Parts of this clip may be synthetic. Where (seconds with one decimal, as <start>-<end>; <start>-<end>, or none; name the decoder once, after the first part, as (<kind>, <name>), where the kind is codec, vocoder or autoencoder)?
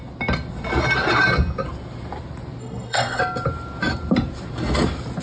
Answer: 2.6-3.2 (codec, SNAC)